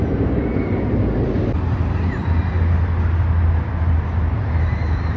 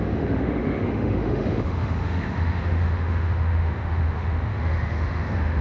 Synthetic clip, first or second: second